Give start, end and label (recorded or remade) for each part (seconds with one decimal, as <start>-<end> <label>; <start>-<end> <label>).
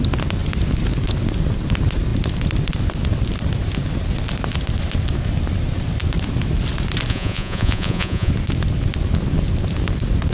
0.0-7.1 recorded; 7.1-8.3 remade; 8.3-10.3 recorded